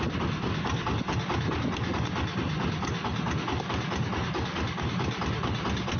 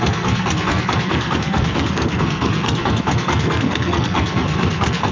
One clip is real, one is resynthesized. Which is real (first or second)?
first